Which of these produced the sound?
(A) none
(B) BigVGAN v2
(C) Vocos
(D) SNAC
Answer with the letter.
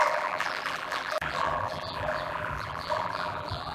B